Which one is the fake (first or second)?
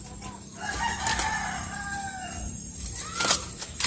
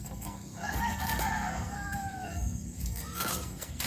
second